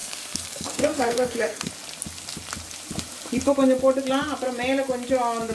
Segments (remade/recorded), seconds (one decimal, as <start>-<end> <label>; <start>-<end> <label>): 0.0-1.7 remade; 1.7-5.5 recorded